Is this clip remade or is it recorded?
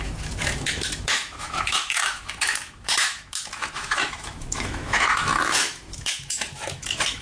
remade